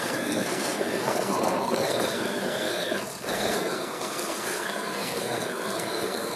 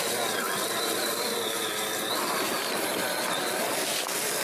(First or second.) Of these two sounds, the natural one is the second